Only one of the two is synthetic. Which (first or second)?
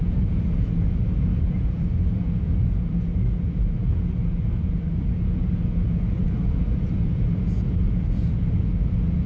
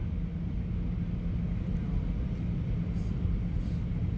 first